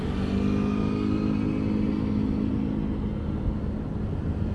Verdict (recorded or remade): recorded